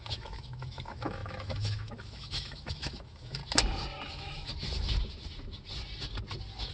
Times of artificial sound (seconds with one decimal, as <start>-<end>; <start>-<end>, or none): 0.0-3.4; 4.1-4.5